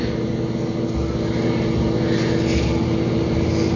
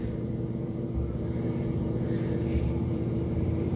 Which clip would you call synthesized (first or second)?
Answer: second